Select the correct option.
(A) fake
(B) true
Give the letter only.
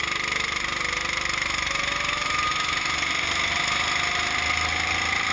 B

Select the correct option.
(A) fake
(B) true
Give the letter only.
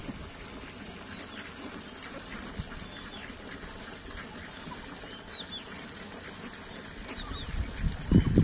B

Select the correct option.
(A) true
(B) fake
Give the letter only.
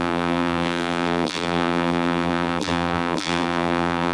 B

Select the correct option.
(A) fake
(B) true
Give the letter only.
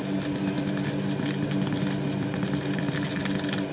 B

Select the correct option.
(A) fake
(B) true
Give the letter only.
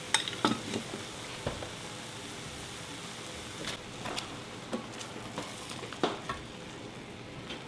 B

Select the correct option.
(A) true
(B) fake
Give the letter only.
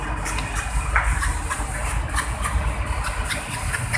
A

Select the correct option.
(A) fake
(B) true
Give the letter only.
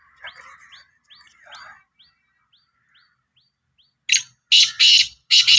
B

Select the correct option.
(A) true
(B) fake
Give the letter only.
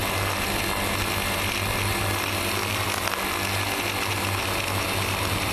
A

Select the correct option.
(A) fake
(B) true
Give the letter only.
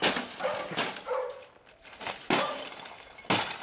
B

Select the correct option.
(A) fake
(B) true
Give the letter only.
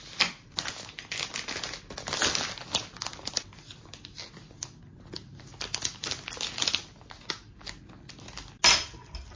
B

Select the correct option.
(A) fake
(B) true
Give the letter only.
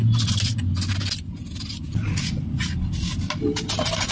B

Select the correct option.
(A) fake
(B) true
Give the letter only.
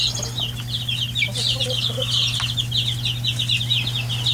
B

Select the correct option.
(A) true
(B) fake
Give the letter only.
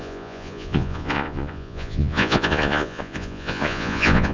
B